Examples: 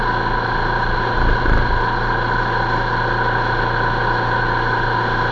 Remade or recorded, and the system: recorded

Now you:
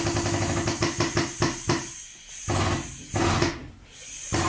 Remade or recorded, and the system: recorded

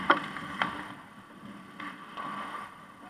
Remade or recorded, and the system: recorded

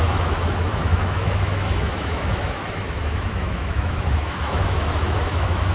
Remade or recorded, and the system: remade, autoencoder, DAC-VAE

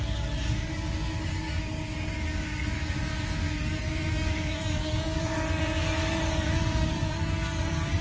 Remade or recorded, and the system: remade, codec, DAC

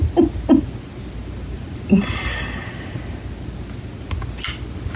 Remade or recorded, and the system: recorded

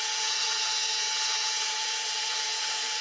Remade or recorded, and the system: remade, vocoder, Vocos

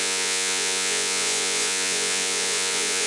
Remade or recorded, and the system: remade, vocoder, Vocos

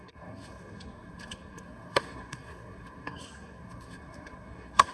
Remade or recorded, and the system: remade, codec, SNAC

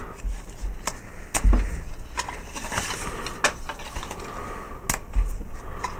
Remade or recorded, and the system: recorded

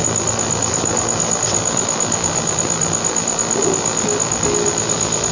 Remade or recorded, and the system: recorded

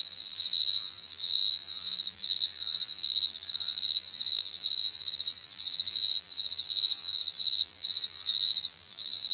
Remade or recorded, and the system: remade, vocoder, BigVGAN v2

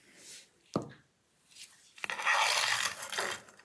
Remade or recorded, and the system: recorded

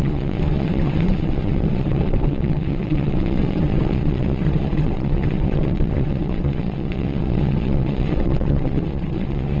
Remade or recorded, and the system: remade, vocoder, WaveNeXt